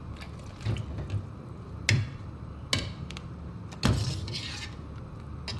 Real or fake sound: real